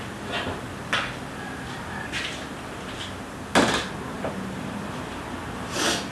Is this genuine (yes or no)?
yes